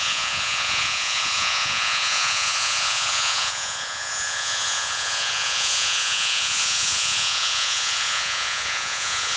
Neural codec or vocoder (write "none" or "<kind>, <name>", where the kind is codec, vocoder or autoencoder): vocoder, Vocos